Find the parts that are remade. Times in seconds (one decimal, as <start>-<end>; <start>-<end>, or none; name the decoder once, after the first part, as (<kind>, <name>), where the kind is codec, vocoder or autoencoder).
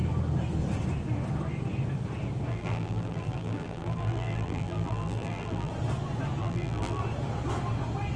2.5-5.7 (vocoder, BigVGAN v2); 6.4-7.0